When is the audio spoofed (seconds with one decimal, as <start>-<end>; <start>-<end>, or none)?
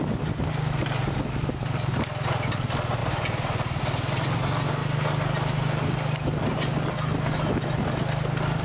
none